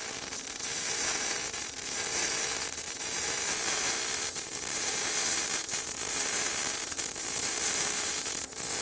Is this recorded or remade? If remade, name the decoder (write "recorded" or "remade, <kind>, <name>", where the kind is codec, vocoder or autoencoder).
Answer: remade, vocoder, BigVGAN v2